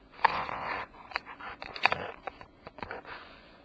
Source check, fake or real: fake